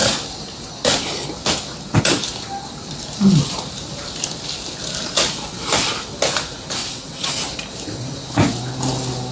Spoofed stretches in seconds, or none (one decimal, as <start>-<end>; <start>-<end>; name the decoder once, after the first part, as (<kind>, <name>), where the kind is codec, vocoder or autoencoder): 6.8-7.3 (vocoder, WaveNeXt)